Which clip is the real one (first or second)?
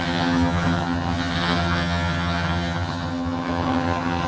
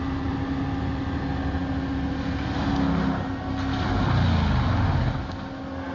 second